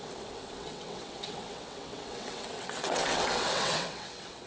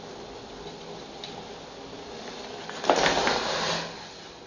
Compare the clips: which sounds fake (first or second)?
first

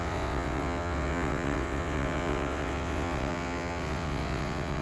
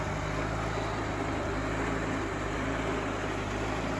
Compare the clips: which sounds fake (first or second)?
first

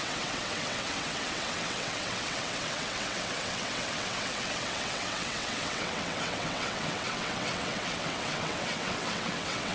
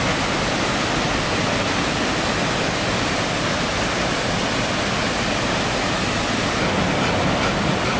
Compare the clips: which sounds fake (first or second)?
first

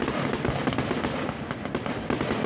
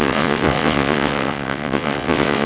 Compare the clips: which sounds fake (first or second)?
second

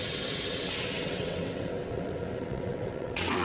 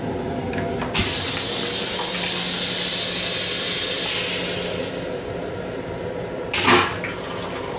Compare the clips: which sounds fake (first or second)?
first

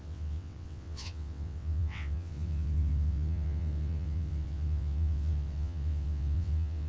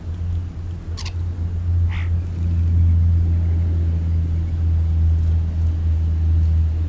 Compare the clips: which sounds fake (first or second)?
first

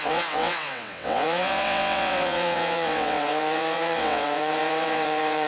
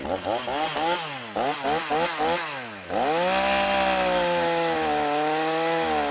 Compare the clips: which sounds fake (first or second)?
first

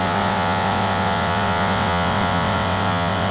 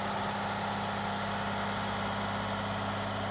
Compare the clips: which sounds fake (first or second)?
first